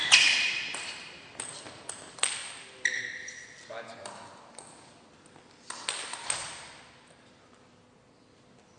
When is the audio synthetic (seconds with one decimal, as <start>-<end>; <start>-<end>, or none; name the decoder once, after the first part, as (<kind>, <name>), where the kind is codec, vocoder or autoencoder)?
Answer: none